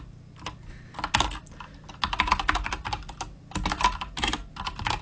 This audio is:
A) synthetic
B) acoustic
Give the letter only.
B